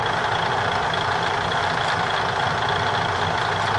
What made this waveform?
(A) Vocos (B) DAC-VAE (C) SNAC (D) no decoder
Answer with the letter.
D